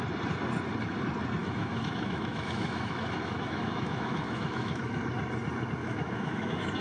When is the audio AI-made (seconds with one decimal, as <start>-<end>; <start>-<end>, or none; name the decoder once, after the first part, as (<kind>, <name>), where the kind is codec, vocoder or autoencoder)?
1.4-5.0 (autoencoder, DAC-VAE); 5.8-6.8